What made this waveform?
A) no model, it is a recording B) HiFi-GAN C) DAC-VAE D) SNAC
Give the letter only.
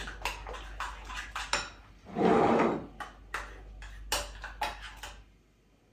A